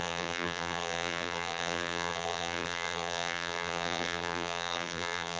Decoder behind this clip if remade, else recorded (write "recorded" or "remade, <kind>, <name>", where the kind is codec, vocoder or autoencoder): remade, vocoder, BigVGAN v2